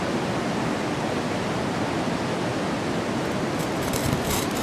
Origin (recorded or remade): recorded